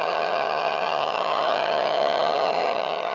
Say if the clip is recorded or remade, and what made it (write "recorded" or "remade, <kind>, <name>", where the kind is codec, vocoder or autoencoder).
remade, vocoder, HiFi-GAN